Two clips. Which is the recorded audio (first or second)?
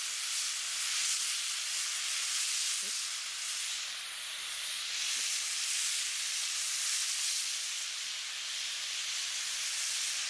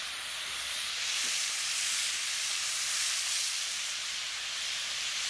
first